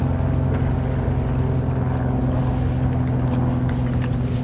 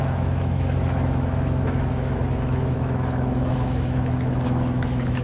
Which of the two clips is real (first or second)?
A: first